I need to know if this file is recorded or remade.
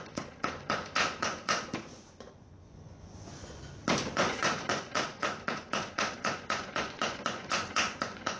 remade